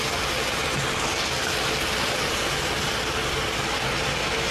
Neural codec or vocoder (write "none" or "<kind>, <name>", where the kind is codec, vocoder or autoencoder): none